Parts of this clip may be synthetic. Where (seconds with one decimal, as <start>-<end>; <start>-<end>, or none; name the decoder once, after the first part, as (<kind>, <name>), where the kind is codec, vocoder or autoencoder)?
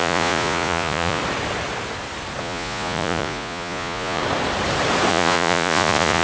0.0-1.2 (vocoder, Vocos); 2.4-4.2; 5.1-6.2